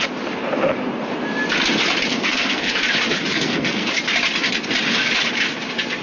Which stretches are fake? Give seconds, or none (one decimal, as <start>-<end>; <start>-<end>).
2.1-2.7; 3.3-3.9